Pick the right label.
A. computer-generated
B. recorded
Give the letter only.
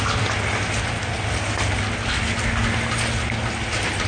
B